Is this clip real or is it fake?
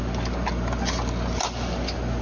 real